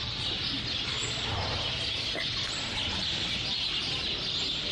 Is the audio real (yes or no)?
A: yes